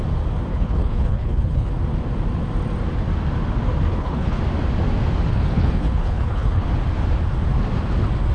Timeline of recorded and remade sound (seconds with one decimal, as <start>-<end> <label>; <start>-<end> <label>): 0.0-0.5 recorded; 0.5-1.7 remade; 1.7-3.9 recorded; 3.9-4.4 remade; 4.4-5.3 recorded; 5.3-6.7 remade; 6.7-8.3 recorded